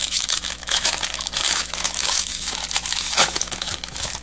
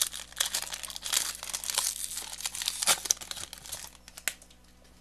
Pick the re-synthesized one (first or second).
first